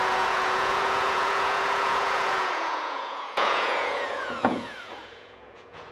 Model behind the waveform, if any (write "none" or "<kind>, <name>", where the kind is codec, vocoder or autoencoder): vocoder, Vocos